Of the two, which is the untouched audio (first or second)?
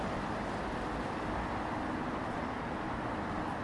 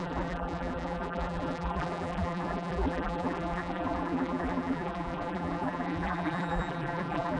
first